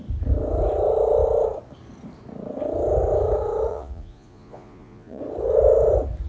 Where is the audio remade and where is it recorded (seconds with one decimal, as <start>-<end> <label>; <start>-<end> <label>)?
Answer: 0.0-3.7 recorded; 3.7-5.2 remade; 5.2-6.3 recorded